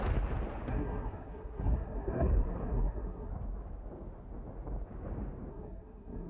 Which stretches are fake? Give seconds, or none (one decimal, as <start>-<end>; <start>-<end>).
0.7-3.3; 5.5-6.3